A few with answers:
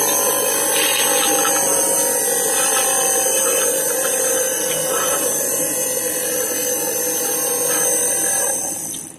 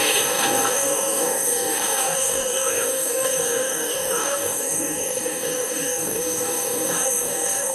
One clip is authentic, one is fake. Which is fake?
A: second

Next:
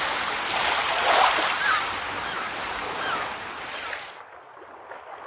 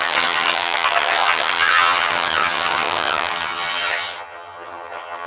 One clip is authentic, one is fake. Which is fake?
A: second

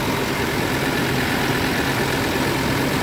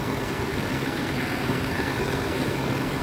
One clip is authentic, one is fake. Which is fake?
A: second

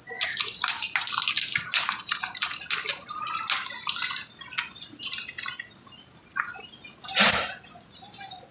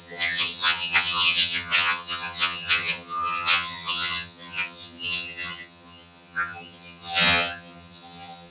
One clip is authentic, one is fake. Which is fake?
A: second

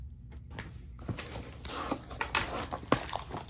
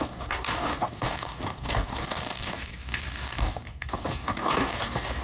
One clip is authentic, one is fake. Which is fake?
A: second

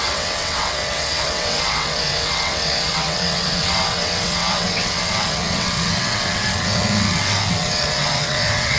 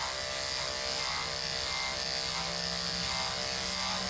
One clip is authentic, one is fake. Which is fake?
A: first